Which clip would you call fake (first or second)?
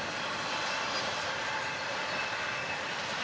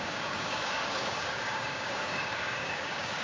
second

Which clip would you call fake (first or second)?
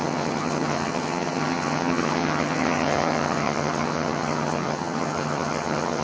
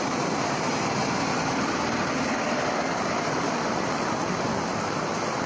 first